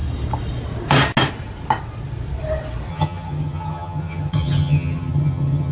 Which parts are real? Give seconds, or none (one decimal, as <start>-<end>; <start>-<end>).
0.0-2.9